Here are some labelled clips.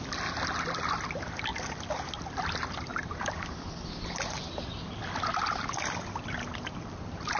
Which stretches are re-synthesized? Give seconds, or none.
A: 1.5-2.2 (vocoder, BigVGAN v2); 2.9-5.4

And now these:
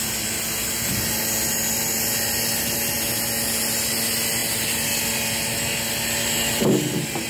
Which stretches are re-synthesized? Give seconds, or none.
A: none

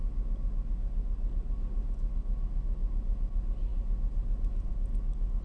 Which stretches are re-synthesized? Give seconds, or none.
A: none

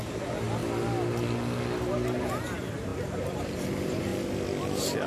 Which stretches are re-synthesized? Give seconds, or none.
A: 0.0-0.6 (vocoder, BigVGAN v2); 2.2-4.1